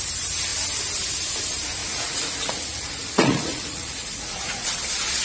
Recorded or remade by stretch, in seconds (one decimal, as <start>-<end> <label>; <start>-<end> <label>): 0.0-1.8 recorded; 1.8-4.7 remade; 4.7-5.2 recorded